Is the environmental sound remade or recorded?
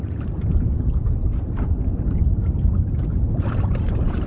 remade